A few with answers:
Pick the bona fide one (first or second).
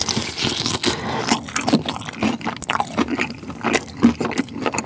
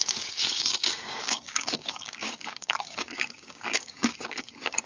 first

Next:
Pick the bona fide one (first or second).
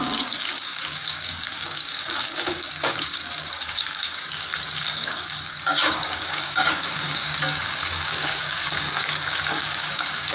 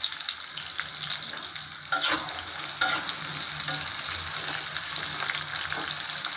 second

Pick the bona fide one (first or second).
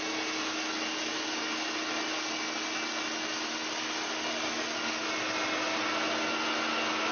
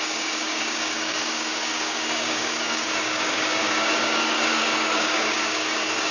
first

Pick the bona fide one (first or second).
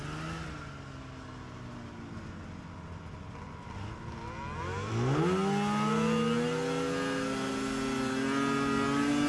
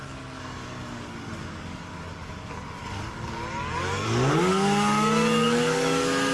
first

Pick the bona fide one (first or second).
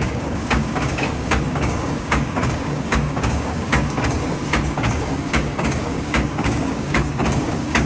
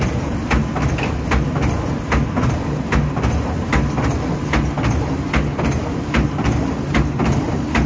second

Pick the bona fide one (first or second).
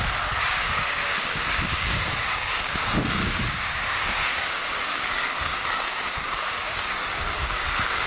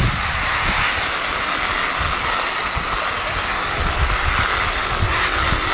second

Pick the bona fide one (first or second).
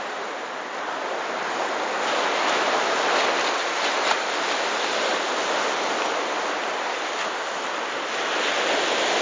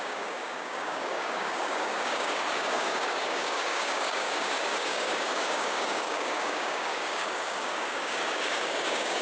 first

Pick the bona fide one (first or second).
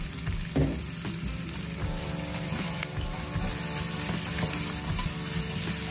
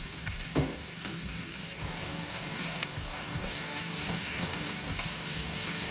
first